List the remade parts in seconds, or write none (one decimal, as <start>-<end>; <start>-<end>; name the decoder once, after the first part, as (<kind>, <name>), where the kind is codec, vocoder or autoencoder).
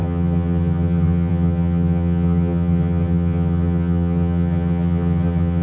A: 0.0-5.6 (vocoder, HiFi-GAN)